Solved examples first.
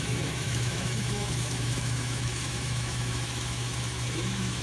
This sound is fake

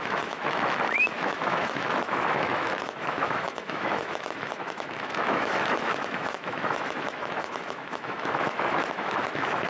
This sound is fake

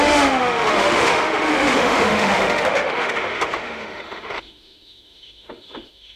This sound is fake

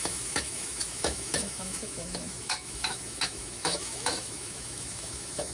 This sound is fake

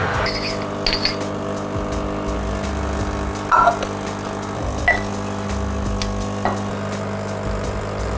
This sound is real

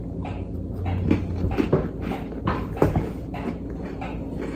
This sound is real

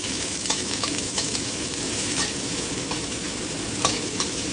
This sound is fake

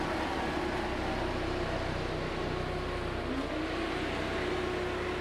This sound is real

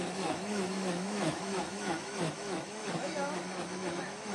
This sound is fake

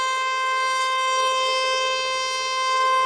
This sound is fake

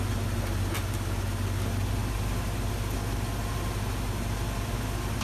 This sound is real